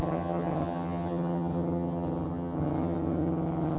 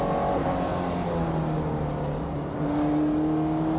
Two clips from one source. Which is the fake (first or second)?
first